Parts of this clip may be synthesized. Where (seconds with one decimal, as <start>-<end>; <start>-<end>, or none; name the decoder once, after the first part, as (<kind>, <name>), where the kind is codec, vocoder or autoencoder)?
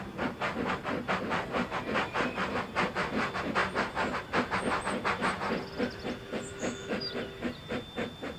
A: 6.5-7.1 (autoencoder, DAC-VAE)